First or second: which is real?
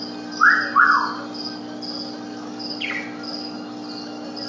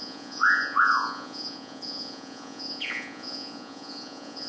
first